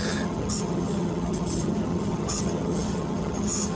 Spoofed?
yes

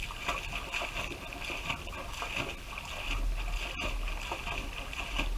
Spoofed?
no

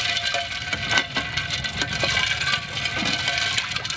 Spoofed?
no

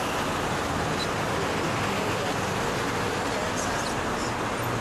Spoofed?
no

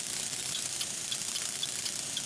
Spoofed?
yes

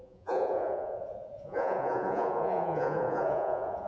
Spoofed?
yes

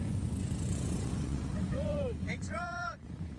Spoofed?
yes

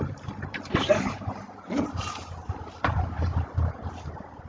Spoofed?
yes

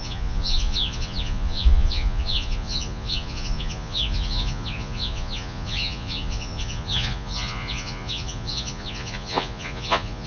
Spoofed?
yes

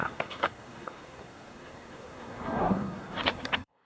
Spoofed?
yes